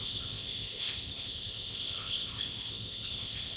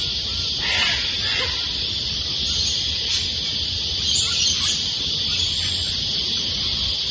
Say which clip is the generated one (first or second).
first